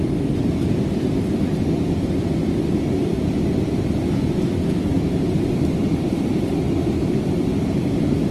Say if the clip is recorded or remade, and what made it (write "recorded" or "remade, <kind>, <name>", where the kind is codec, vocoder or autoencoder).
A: remade, vocoder, BigVGAN v2